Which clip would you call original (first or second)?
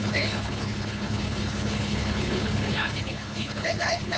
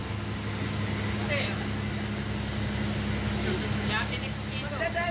second